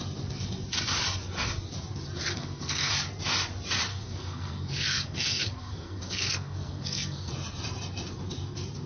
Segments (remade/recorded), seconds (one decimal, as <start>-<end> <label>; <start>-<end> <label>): 0.0-2.2 recorded; 2.2-2.9 remade; 2.9-3.9 recorded; 3.9-7.3 remade; 7.3-8.9 recorded